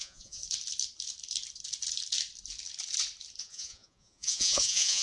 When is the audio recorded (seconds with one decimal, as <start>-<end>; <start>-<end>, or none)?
0.4-3.4